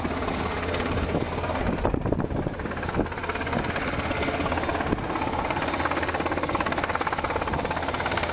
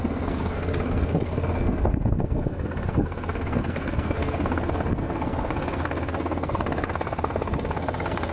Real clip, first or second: first